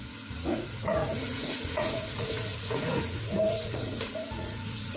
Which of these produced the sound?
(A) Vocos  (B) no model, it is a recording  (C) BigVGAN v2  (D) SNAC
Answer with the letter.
A